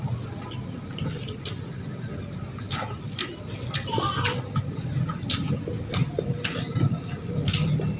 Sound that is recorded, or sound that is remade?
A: recorded